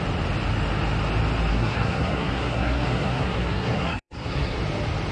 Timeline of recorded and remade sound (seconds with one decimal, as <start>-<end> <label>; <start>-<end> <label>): 0.0-1.5 recorded; 1.5-4.6 remade; 4.6-5.1 recorded